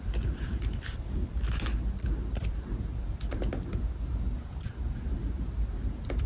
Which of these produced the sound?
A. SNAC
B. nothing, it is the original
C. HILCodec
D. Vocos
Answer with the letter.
B